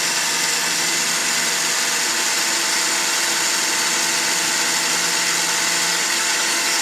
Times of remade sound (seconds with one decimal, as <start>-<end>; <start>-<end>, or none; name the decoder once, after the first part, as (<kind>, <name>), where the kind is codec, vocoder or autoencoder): 5.9-6.8 (codec, DAC)